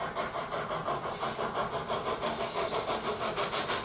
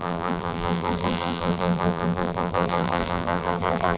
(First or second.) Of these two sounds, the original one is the first